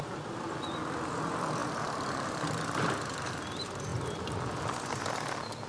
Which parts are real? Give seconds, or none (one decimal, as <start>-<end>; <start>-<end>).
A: 0.0-1.6; 3.3-5.7

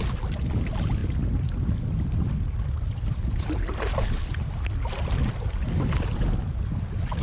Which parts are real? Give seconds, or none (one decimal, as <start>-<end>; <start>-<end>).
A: 0.0-7.2

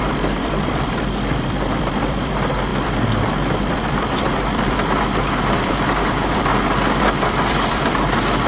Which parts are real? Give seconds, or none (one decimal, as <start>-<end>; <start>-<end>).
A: 6.5-7.0

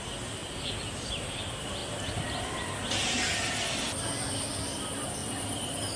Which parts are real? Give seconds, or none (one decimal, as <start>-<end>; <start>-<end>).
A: 0.0-0.4; 1.3-5.2

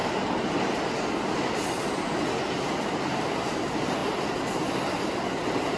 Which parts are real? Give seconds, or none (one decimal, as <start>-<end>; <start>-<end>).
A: 0.0-5.8